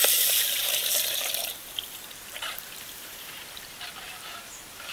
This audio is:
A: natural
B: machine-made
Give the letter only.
B